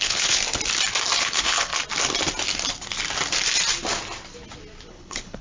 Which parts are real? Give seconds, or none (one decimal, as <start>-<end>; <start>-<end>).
0.4-1.2; 1.7-4.9